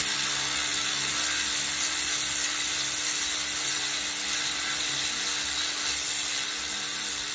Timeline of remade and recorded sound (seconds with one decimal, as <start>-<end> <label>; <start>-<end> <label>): 0.0-7.3 recorded